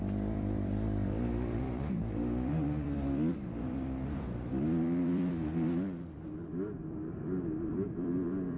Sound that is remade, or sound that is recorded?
remade